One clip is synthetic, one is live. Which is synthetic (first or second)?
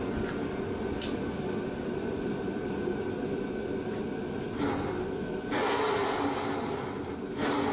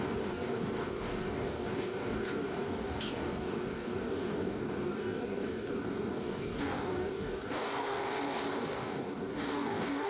second